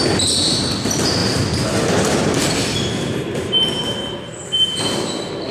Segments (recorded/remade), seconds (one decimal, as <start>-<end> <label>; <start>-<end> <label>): 0.0-5.5 recorded